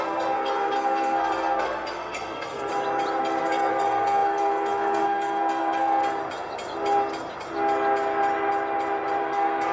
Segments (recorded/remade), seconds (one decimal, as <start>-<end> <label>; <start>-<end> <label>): 0.0-2.7 remade; 2.7-3.2 recorded; 3.2-6.0 remade; 6.0-9.2 recorded; 9.2-9.7 remade